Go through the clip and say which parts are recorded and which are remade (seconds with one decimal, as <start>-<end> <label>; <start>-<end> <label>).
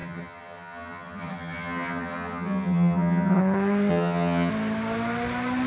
0.0-3.4 remade; 3.4-3.9 recorded; 3.9-4.5 remade; 4.5-5.7 recorded